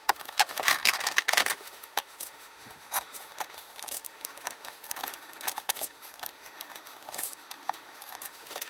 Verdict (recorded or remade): remade